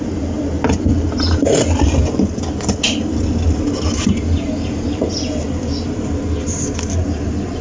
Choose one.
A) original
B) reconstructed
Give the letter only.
A